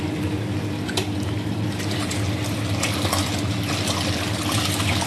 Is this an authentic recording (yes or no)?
yes